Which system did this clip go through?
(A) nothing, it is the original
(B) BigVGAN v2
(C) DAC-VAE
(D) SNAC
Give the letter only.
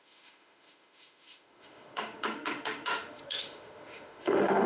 C